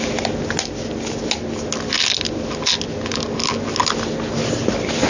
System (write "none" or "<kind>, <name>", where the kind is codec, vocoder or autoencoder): none